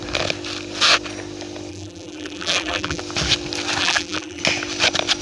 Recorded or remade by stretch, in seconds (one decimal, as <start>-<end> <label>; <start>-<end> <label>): 0.0-1.7 recorded; 1.7-3.0 remade; 3.0-3.8 recorded; 3.8-4.4 remade; 4.4-5.2 recorded